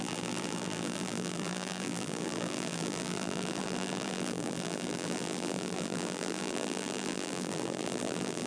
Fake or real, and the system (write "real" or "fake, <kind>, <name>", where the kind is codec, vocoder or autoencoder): fake, vocoder, BigVGAN v2